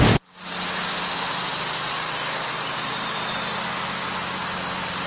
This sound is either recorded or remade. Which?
recorded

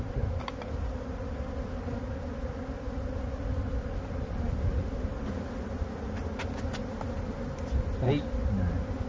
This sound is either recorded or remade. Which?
recorded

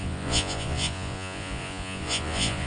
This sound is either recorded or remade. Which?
remade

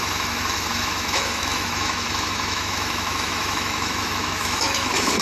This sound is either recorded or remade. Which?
remade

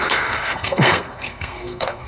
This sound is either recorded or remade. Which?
remade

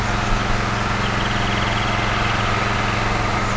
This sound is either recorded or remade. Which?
recorded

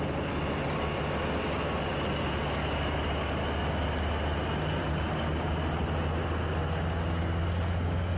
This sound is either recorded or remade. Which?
recorded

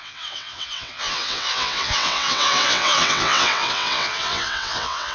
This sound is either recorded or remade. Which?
remade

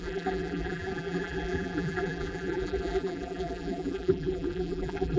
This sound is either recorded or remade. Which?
remade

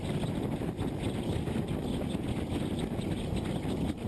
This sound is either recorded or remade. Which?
recorded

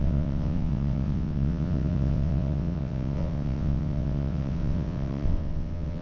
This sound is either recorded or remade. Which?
remade